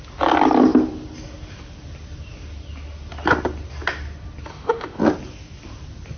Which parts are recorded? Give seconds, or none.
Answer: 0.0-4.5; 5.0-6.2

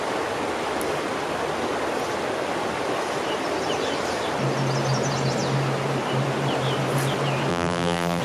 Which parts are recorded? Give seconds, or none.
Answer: 0.0-7.5